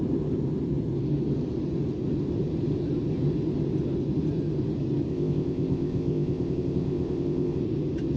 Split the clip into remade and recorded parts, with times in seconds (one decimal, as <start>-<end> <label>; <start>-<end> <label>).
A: 0.0-5.1 recorded; 5.1-7.6 remade; 7.6-8.2 recorded